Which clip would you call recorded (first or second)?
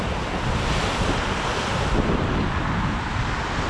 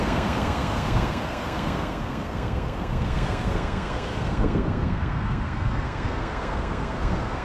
first